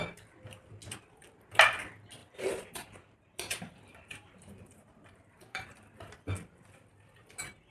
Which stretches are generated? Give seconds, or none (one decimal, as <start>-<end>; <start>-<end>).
2.2-5.9